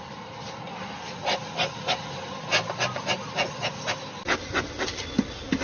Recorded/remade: recorded